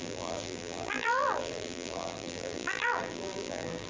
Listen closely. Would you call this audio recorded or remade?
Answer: remade